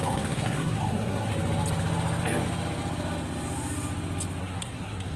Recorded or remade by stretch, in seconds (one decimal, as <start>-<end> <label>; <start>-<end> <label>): 0.0-1.3 remade; 1.3-4.4 recorded; 4.4-5.2 remade